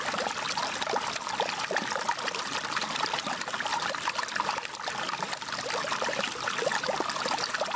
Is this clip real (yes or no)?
yes